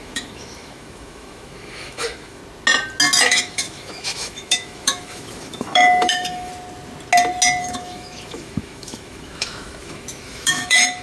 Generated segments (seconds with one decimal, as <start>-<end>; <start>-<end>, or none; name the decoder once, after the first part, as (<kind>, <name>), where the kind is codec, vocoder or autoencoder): 0.0-2.4 (autoencoder, DAC-VAE); 3.2-6.5; 7.6-11.0